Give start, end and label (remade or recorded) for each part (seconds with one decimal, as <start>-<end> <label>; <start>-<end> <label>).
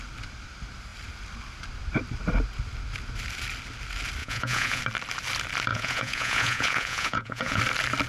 0.0-4.2 recorded; 4.2-4.8 remade; 4.8-5.7 recorded; 5.7-7.6 remade; 7.6-8.1 recorded